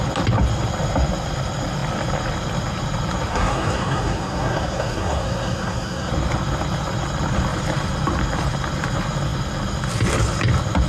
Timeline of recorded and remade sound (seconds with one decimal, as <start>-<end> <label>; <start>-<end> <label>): 0.0-3.3 recorded; 3.3-6.1 remade; 6.1-10.9 recorded